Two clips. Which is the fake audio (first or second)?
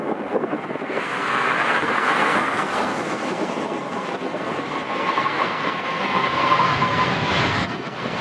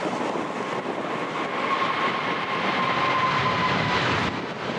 first